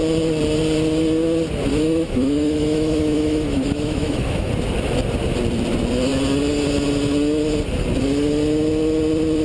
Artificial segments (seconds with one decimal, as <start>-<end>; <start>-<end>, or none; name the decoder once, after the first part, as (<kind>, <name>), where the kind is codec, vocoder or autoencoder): 1.7-4.5 (autoencoder, DAC-VAE)